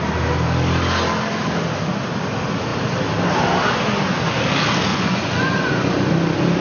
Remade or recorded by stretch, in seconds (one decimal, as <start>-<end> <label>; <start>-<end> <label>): 0.0-4.9 recorded; 4.9-5.7 remade; 5.7-6.6 recorded